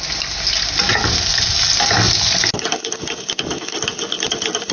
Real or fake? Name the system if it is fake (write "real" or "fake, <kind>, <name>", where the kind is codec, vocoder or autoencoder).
real